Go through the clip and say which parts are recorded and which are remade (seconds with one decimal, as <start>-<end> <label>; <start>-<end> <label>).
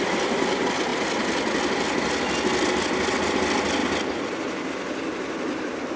0.0-6.0 recorded